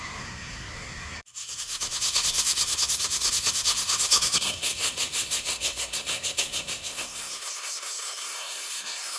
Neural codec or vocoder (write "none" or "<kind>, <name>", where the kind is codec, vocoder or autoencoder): codec, SNAC